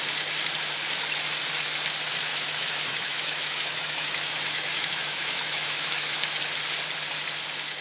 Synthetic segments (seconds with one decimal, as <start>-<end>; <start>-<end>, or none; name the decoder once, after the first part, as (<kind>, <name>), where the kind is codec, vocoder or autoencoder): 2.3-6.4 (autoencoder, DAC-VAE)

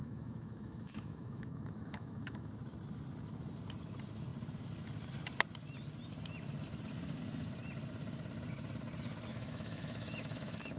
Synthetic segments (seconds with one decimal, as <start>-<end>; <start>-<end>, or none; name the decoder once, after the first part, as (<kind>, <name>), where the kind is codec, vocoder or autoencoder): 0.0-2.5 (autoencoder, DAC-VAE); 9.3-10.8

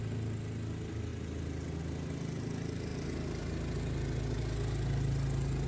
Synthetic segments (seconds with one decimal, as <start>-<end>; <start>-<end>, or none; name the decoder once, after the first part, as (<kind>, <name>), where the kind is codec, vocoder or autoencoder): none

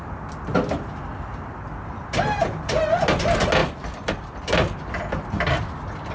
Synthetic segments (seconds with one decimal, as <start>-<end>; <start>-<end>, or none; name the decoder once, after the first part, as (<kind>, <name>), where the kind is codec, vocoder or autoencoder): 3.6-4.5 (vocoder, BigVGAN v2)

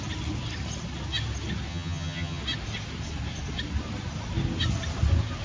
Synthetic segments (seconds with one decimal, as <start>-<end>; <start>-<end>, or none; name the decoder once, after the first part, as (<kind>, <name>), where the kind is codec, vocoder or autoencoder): 1.7-2.4 (vocoder, HiFi-GAN)

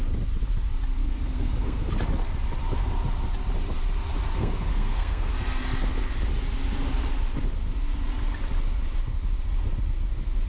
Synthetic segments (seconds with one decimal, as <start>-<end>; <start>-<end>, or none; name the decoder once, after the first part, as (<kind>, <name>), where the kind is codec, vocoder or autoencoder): 1.0-1.9 (codec, SNAC); 4.3-5.3

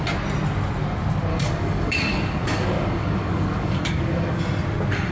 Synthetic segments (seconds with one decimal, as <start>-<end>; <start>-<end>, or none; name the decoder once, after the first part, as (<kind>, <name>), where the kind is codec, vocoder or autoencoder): 1.3-4.4 (codec, DAC)